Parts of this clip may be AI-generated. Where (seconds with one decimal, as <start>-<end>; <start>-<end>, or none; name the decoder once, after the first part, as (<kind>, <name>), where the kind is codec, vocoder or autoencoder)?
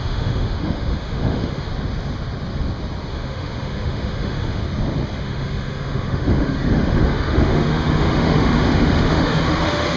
0.0-1.7 (autoencoder, DAC-VAE); 3.1-4.6; 5.2-10.0